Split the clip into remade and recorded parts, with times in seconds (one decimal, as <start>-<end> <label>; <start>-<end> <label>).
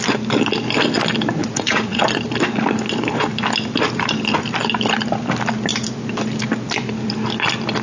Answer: 0.0-1.4 recorded; 1.4-2.0 remade; 2.0-7.8 recorded